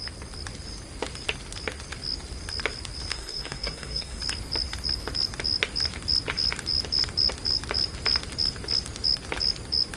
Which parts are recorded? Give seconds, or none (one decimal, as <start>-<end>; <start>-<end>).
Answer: 0.0-3.1; 4.2-10.0